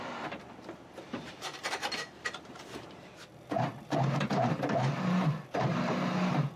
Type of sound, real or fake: fake